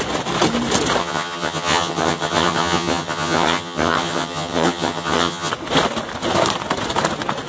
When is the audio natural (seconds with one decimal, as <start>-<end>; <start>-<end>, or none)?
0.0-1.0; 5.5-7.5